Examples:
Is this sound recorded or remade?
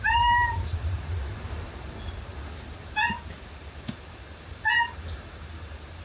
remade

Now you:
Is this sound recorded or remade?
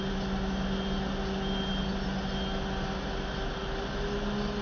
recorded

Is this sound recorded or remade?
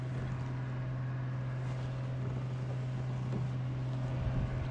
recorded